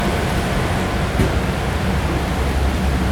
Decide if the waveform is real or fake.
real